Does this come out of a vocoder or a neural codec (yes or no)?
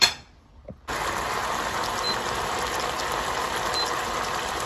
no